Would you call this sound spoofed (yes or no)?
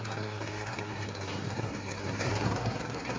yes